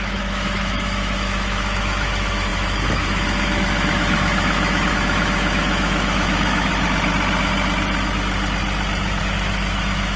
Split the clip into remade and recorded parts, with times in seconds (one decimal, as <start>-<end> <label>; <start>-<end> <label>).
0.0-6.7 remade; 6.7-9.2 recorded; 9.2-10.2 remade